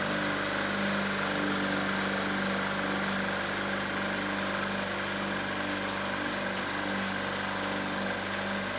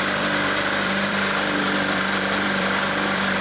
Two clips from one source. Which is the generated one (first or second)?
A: second